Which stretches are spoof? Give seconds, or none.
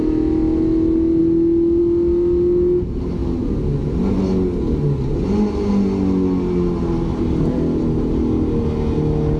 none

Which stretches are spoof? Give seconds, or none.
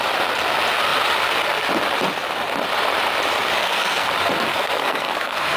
3.6-4.1 (codec, SNAC); 4.5-5.6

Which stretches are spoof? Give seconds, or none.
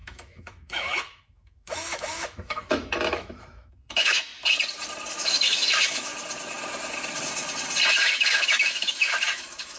0.0-4.3 (autoencoder, DAC-VAE); 5.1-6.1; 7.9-9.8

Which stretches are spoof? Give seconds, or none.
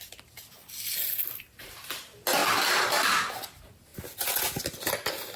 none